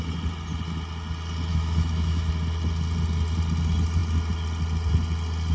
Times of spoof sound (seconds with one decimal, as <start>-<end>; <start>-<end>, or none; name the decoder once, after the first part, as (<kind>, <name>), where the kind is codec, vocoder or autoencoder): 1.5-2.3 (autoencoder, DAC-VAE)